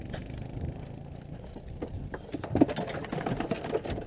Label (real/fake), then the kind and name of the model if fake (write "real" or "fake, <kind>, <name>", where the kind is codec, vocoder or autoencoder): real